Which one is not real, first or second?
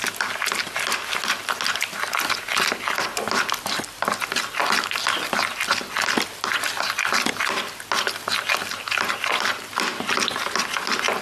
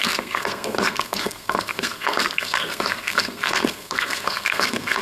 second